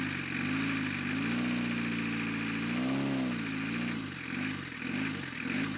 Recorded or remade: recorded